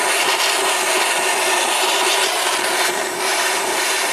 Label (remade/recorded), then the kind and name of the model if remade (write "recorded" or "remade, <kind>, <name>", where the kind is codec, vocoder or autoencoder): recorded